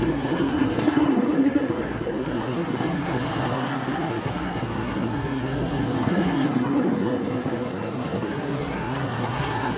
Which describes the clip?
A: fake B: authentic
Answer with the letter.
A